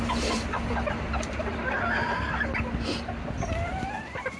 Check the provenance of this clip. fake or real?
fake